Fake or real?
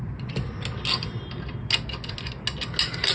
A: real